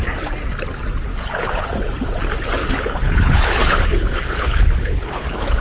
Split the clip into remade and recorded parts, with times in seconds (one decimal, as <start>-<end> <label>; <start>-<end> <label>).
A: 0.0-1.1 recorded; 1.1-1.9 remade; 1.9-2.6 recorded; 2.6-5.6 remade